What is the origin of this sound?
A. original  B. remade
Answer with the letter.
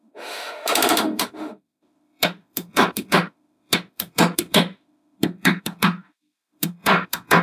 B